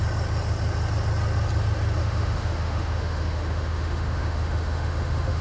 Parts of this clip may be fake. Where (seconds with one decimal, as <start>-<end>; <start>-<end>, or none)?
2.0-5.4